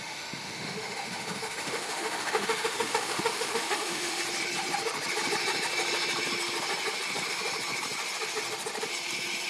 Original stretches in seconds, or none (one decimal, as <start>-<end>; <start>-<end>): 4.2-9.5

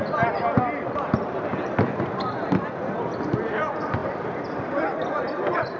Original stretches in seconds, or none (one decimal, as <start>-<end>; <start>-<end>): 0.0-5.8